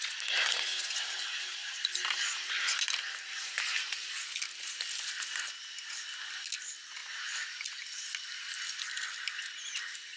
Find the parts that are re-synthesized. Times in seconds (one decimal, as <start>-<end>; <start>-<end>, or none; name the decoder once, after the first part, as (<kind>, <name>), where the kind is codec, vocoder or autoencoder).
none

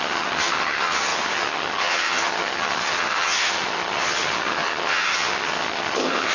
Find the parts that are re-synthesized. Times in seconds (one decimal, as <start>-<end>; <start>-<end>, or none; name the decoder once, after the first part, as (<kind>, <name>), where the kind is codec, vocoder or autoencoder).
0.0-6.3 (vocoder, HiFi-GAN)

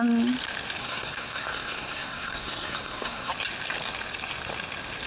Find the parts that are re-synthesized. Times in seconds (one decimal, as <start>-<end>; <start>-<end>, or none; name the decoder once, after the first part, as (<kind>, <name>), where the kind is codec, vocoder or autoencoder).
0.8-3.3 (codec, SNAC)

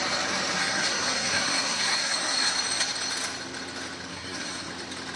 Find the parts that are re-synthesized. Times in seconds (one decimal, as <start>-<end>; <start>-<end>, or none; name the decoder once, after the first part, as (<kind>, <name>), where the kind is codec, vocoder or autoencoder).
0.6-2.5 (codec, SNAC); 4.1-4.7